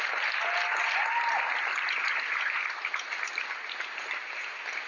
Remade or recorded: recorded